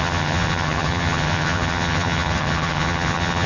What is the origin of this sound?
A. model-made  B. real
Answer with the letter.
A